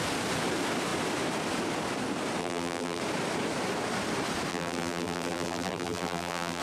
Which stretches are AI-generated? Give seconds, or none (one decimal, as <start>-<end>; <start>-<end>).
2.4-3.0; 4.5-6.6